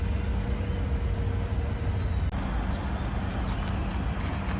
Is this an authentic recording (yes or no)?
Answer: yes